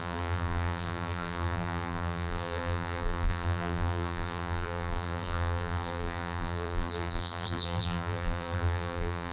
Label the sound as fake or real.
fake